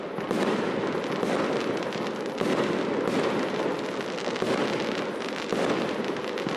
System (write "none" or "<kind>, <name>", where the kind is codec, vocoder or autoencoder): none